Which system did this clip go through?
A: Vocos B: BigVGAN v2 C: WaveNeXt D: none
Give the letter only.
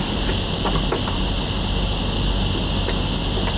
D